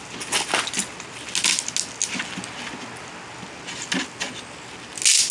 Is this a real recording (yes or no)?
yes